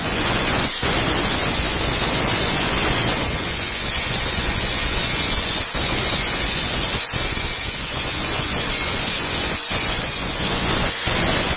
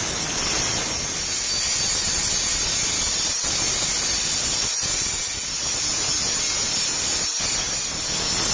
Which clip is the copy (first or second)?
first